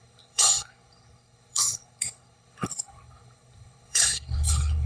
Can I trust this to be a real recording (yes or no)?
no